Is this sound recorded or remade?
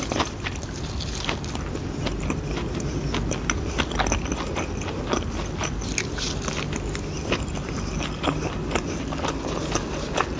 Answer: recorded